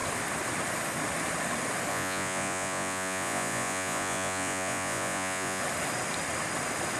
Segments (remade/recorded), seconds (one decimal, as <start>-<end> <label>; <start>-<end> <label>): 0.0-1.9 recorded; 1.9-5.6 remade; 5.6-7.0 recorded